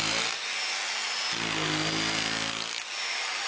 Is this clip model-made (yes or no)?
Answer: no